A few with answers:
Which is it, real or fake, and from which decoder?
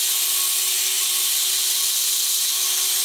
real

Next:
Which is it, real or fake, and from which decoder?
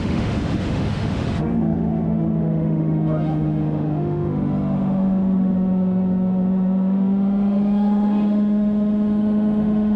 fake, autoencoder, DAC-VAE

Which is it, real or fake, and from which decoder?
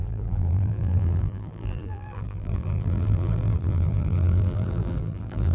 fake, vocoder, BigVGAN v2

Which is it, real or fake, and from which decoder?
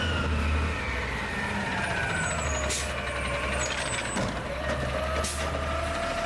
real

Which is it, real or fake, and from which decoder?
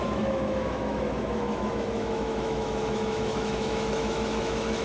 fake, autoencoder, DAC-VAE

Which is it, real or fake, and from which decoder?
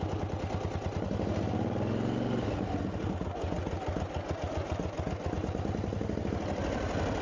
real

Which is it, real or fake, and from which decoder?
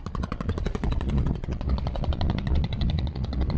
fake, vocoder, Vocos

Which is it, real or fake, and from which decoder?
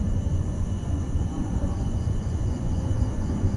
fake, vocoder, Vocos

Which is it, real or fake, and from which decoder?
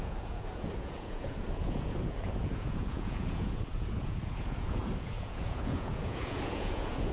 fake, vocoder, Vocos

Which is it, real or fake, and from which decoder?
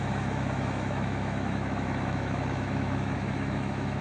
fake, autoencoder, DAC-VAE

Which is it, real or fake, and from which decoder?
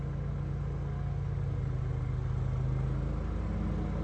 real